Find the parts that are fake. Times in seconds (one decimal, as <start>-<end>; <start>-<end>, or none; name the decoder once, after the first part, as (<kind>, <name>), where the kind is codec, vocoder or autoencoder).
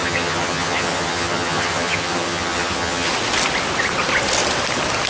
0.0-3.1 (vocoder, HiFi-GAN)